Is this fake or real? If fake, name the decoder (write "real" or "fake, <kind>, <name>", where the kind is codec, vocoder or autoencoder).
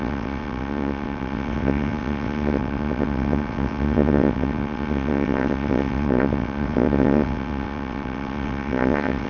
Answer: fake, vocoder, WaveNeXt